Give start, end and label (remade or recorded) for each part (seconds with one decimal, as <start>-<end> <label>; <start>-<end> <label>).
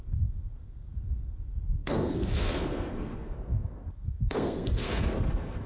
0.0-5.7 remade